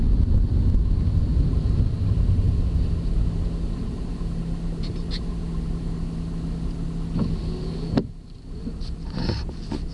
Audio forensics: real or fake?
real